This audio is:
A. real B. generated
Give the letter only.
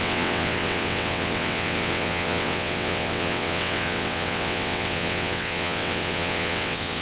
B